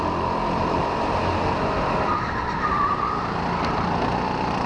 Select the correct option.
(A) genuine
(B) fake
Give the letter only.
A